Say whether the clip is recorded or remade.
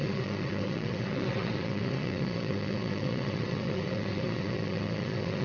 remade